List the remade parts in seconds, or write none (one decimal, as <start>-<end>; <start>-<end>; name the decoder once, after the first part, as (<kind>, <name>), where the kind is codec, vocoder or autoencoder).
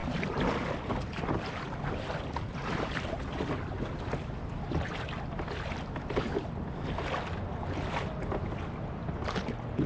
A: none